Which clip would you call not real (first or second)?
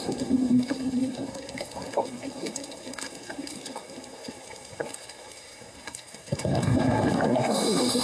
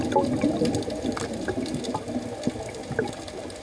first